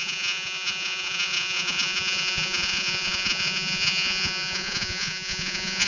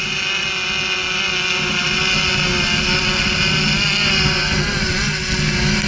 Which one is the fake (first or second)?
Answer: first